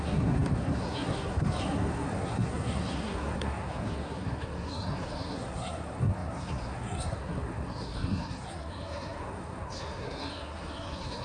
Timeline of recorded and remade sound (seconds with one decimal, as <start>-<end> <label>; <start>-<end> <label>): 0.0-11.2 remade